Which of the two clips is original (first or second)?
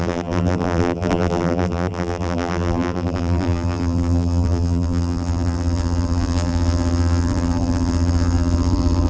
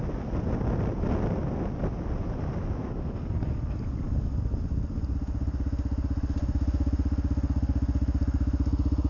second